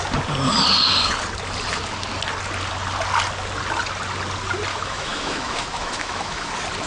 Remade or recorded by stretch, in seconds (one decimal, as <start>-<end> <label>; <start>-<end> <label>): 0.0-4.7 recorded; 4.7-6.5 remade; 6.5-6.9 recorded